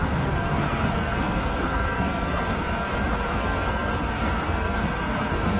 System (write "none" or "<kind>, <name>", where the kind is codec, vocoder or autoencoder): codec, SNAC